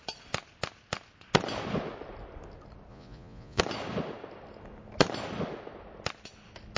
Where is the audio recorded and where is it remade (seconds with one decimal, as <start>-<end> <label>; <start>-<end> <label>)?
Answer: 0.0-2.9 recorded; 2.9-3.6 remade; 3.6-6.8 recorded